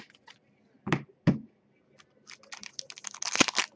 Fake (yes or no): no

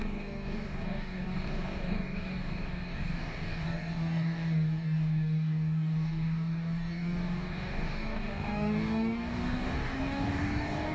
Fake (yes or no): yes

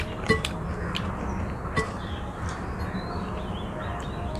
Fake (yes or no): no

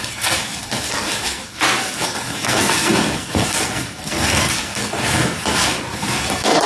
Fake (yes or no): yes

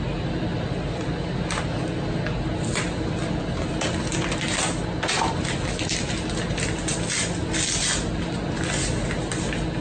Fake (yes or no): no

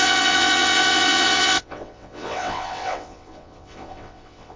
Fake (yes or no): yes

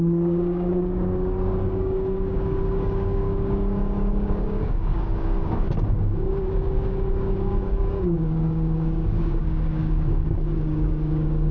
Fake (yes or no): yes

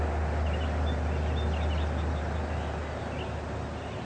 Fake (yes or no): no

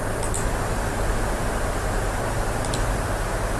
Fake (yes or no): no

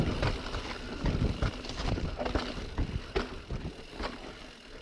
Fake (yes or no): no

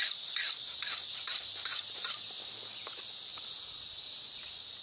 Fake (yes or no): no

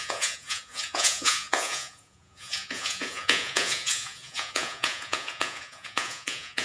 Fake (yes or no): yes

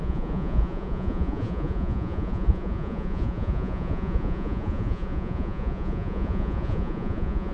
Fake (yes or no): yes